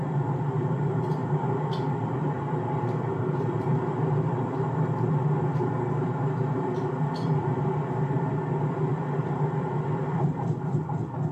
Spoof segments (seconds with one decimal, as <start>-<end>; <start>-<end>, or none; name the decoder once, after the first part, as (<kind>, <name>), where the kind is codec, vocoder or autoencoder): 0.0-11.3 (vocoder, BigVGAN v2)